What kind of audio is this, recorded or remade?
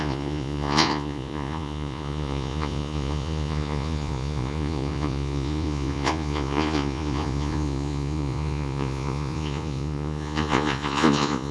remade